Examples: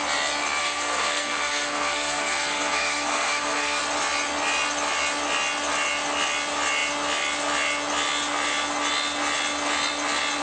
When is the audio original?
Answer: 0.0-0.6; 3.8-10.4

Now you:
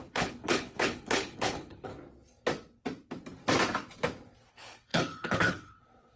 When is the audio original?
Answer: 1.9-4.5

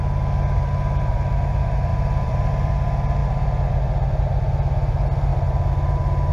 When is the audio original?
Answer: 0.0-1.9; 2.5-6.3

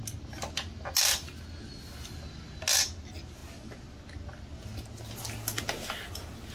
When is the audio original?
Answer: 0.0-6.5

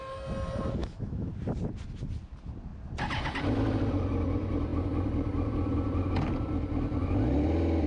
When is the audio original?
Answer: 0.0-0.8; 1.3-7.9

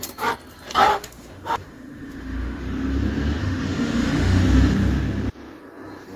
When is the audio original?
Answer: 0.0-0.9; 2.6-3.4; 4.4-6.2

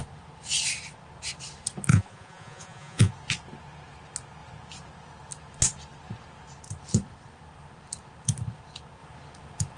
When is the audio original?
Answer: 0.0-1.9; 3.1-9.8

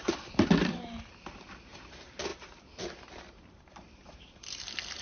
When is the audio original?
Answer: none